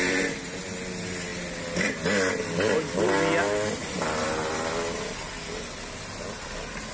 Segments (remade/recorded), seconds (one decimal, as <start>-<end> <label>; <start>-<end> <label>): 0.0-3.8 recorded; 3.8-4.6 remade; 4.6-6.9 recorded